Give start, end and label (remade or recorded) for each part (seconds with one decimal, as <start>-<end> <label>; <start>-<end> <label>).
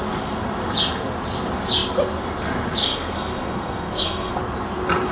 0.0-2.8 recorded; 2.8-4.3 remade; 4.3-5.1 recorded